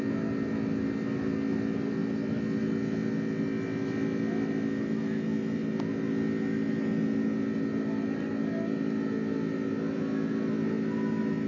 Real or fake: real